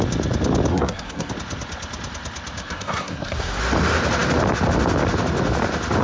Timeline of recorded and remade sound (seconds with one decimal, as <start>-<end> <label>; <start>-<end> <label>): 0.0-0.7 recorded; 0.7-1.3 remade; 1.3-2.6 recorded; 2.6-3.6 remade; 3.6-6.0 recorded